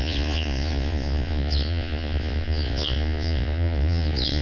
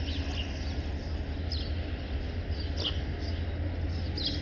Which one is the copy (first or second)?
first